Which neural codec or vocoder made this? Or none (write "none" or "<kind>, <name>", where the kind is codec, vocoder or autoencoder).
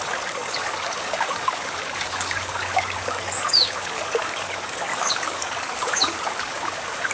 codec, DAC